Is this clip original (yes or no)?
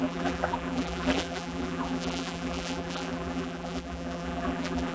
no